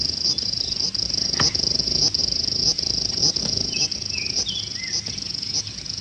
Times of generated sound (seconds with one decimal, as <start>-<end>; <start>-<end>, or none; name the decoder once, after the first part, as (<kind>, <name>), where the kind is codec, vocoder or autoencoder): none